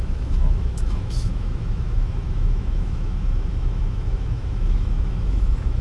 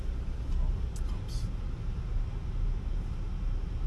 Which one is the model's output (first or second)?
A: first